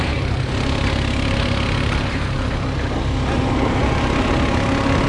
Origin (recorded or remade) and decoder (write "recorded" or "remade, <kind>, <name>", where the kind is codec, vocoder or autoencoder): recorded